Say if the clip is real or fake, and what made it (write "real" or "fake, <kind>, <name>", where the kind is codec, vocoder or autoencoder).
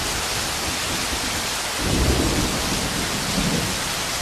real